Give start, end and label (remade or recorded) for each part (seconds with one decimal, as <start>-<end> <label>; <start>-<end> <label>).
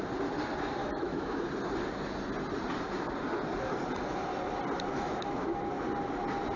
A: 0.0-0.8 recorded; 0.8-1.4 remade; 1.4-4.9 recorded; 4.9-5.7 remade; 5.7-6.6 recorded